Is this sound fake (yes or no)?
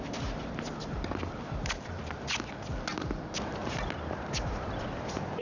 no